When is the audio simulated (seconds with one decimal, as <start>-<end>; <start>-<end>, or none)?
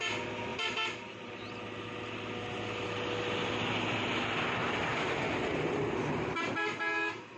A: 0.5-1.3; 4.6-5.8